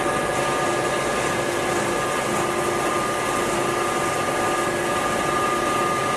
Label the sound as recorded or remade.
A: recorded